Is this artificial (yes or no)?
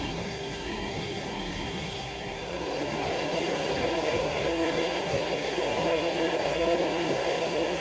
yes